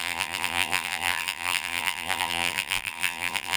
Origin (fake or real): fake